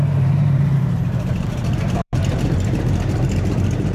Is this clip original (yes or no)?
no